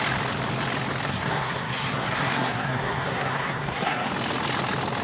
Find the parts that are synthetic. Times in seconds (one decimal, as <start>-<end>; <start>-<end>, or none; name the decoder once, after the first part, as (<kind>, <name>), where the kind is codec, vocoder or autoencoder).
1.1-4.1 (codec, SNAC)